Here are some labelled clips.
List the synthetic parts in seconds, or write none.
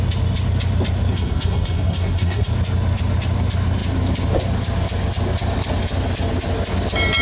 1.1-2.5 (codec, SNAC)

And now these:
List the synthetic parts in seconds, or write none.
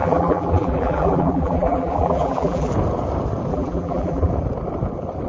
0.0-2.7 (vocoder, BigVGAN v2); 3.5-4.3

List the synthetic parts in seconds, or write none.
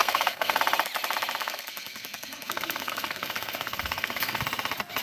0.0-0.6 (codec, SNAC); 1.4-4.4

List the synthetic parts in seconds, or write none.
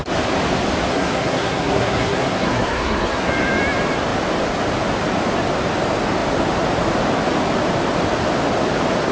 0.9-3.3 (codec, SNAC)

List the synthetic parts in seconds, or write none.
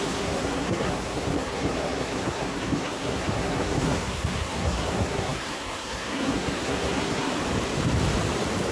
0.0-7.3 (codec, SNAC)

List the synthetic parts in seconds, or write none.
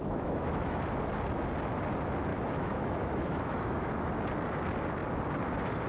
0.0-0.8 (autoencoder, DAC-VAE); 2.3-4.1